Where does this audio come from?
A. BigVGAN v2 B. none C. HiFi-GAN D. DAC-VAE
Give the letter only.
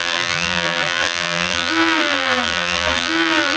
A